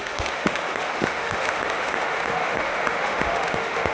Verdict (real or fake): fake